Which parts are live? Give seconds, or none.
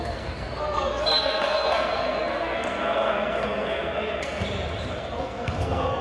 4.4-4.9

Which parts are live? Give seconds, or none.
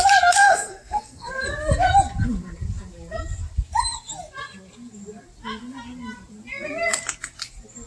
0.0-0.4; 1.3-7.9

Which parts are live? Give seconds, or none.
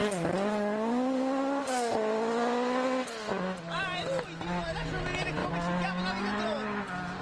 0.0-7.2